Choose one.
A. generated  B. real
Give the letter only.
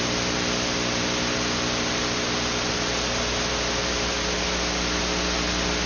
B